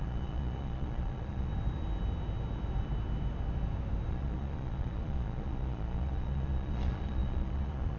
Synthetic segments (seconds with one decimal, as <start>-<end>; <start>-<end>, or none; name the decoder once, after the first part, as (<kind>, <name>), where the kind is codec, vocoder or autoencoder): 0.0-1.5 (vocoder, Vocos); 4.1-8.0